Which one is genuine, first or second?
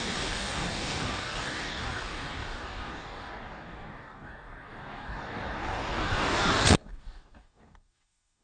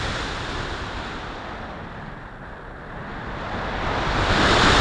second